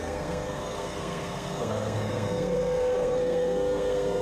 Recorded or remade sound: remade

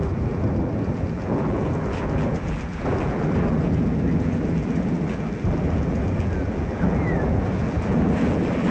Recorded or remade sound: remade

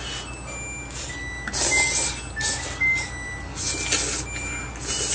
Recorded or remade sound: recorded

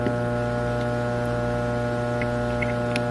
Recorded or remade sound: recorded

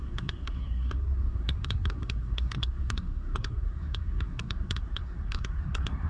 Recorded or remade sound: remade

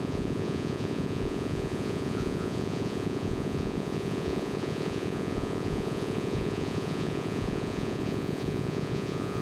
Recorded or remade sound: remade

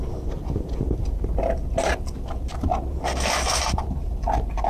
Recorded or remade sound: recorded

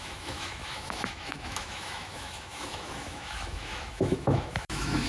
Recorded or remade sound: remade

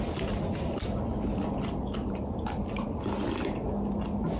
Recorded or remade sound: recorded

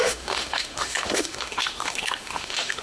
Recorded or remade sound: remade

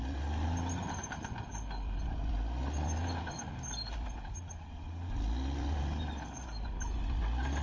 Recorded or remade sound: recorded